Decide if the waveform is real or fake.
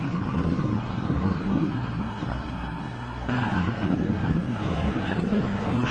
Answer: fake